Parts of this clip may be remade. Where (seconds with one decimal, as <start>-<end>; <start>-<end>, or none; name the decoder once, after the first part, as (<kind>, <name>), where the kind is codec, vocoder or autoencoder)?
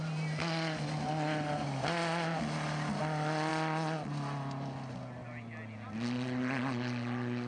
none